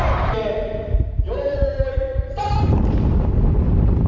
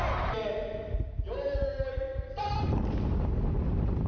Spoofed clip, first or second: first